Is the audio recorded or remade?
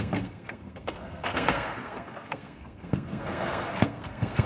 remade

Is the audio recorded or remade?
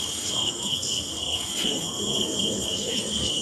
remade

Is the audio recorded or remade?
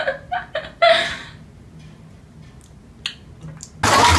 recorded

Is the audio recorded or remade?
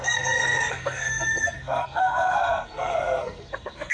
remade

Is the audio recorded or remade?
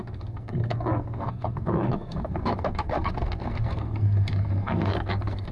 remade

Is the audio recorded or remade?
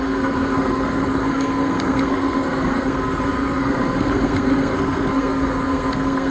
remade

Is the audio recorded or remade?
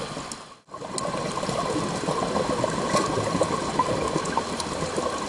recorded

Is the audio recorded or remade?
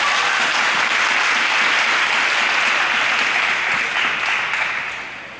recorded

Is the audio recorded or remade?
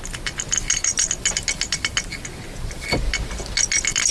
recorded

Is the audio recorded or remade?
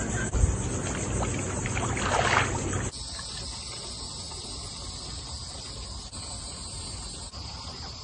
recorded